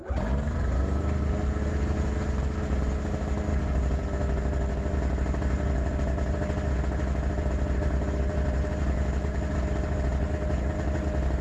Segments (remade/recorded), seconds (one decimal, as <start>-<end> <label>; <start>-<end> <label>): 0.0-11.4 recorded